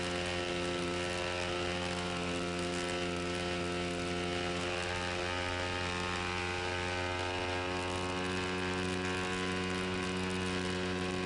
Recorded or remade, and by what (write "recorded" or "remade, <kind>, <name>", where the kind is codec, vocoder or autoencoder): recorded